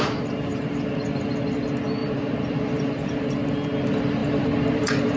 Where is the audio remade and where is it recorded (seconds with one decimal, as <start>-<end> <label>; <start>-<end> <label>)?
0.0-2.0 recorded; 2.0-3.3 remade; 3.3-4.2 recorded; 4.2-5.2 remade